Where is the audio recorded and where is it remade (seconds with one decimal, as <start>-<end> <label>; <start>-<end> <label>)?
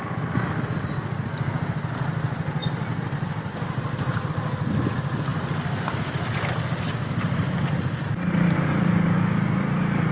0.0-10.1 recorded